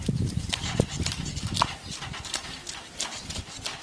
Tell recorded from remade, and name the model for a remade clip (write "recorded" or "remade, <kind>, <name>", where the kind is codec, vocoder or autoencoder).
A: recorded